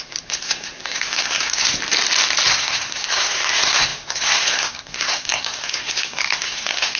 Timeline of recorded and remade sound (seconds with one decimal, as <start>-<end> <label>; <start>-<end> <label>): 0.0-1.8 remade; 1.8-2.5 recorded; 2.5-7.0 remade